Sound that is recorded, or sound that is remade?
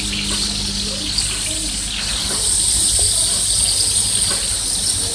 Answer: recorded